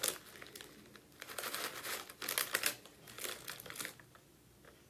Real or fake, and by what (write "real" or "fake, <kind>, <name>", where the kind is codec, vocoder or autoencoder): real